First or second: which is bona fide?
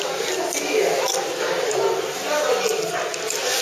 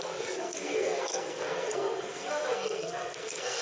first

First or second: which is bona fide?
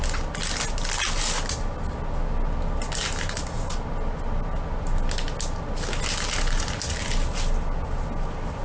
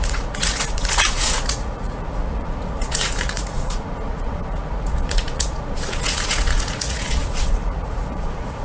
first